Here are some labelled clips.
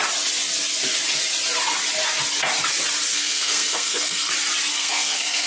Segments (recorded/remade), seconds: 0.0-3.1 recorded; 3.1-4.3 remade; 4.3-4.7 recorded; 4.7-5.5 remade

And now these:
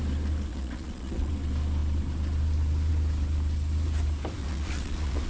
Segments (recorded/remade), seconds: 0.0-0.5 recorded; 0.5-1.3 remade; 1.3-4.4 recorded; 4.4-5.3 remade

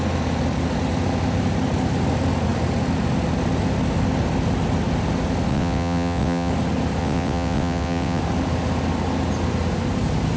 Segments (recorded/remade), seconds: 0.0-5.5 recorded; 5.5-6.5 remade; 6.5-7.0 recorded; 7.0-8.2 remade; 8.2-10.4 recorded

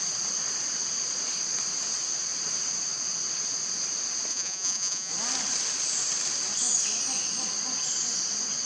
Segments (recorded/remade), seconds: 0.0-4.3 recorded; 4.3-5.1 remade; 5.1-8.7 recorded

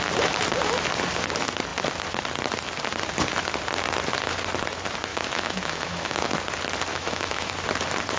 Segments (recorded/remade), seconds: 0.0-5.1 recorded; 5.1-6.3 remade; 6.3-6.9 recorded; 6.9-7.5 remade; 7.5-8.2 recorded

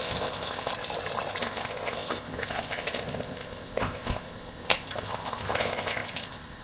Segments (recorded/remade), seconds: 0.0-0.7 remade; 0.7-1.4 recorded; 1.4-6.6 remade